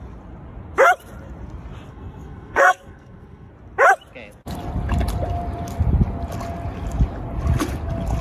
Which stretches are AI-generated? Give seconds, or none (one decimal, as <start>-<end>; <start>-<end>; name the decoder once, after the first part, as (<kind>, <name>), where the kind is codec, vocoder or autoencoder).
1.9-3.5 (codec, SNAC)